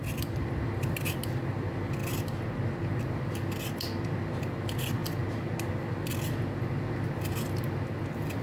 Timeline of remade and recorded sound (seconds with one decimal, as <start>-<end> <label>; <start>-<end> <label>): 0.0-8.4 recorded